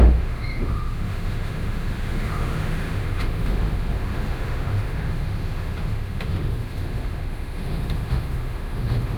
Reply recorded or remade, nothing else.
remade